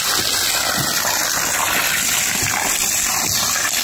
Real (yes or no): yes